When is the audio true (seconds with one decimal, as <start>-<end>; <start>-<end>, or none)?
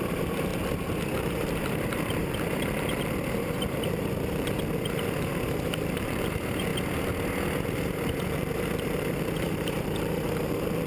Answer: 0.5-1.6; 6.7-7.7